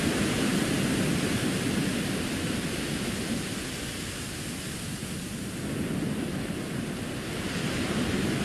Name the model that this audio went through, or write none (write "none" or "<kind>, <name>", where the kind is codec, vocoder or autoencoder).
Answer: none